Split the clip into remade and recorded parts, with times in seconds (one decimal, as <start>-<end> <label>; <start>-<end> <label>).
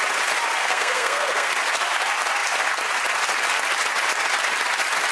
0.0-0.6 recorded; 0.6-1.5 remade; 1.5-5.1 recorded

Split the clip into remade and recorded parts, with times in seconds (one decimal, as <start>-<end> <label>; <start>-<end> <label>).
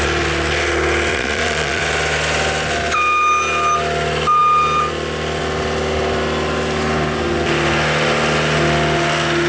0.0-1.1 recorded; 1.1-1.8 remade; 1.8-9.5 recorded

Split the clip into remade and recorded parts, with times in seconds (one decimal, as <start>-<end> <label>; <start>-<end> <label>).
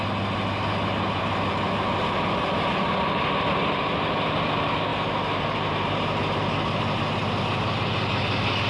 0.0-8.7 recorded